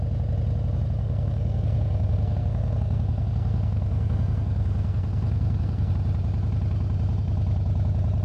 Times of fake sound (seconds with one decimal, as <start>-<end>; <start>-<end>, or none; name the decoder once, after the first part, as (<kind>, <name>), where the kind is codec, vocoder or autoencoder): 1.0-5.9 (codec, SNAC)